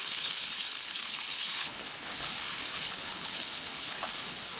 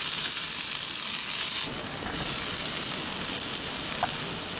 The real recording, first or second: second